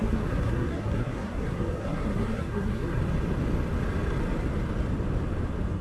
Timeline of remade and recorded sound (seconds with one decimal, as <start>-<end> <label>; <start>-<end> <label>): 0.0-3.0 remade; 3.0-5.8 recorded